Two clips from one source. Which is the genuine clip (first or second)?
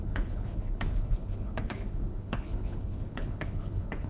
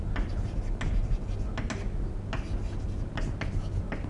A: second